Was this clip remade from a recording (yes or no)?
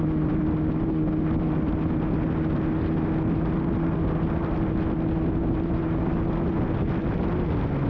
no